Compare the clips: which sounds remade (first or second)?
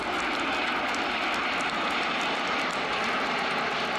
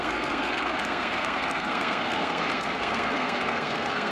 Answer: second